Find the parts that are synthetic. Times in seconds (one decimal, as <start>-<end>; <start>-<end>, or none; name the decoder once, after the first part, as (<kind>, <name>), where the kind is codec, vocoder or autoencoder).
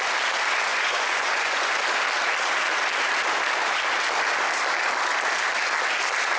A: 0.7-1.7 (vocoder, Vocos)